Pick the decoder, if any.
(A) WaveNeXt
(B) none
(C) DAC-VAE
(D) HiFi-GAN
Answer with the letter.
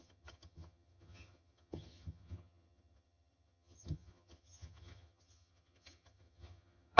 D